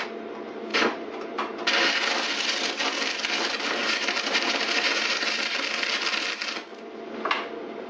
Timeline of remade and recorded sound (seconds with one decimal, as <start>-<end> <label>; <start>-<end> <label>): 0.0-0.7 recorded; 0.7-1.7 remade; 1.7-3.8 recorded; 3.8-4.6 remade; 4.6-7.9 recorded